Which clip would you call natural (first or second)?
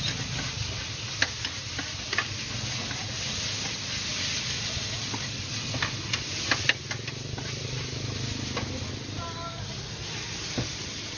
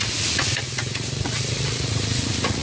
first